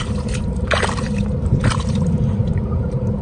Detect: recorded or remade remade